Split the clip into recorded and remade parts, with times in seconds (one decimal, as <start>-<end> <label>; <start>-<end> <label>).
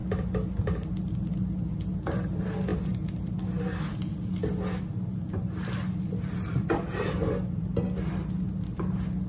0.0-9.3 recorded